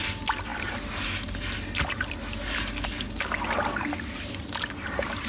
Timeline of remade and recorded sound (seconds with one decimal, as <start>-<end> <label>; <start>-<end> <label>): 0.0-5.3 recorded